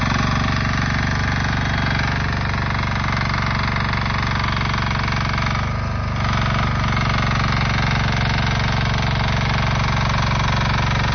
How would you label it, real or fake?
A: real